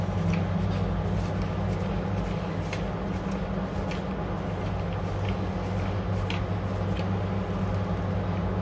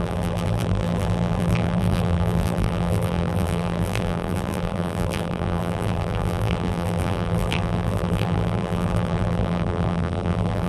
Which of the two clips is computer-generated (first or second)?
second